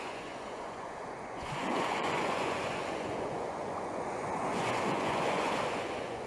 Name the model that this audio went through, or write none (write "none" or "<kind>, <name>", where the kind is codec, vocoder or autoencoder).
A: vocoder, Vocos